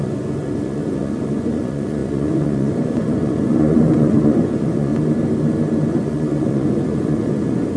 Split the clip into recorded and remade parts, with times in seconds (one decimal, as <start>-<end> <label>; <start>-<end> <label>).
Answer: 0.0-4.9 remade; 4.9-5.9 recorded; 5.9-7.8 remade